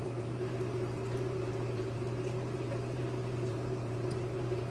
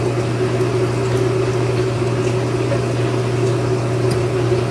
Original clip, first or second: second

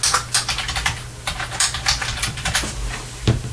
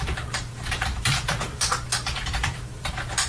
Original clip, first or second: first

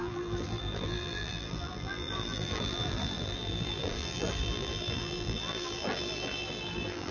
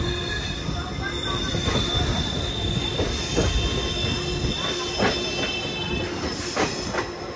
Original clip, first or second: second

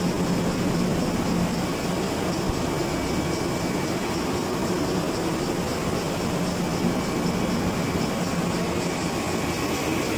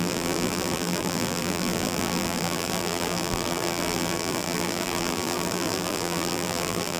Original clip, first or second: first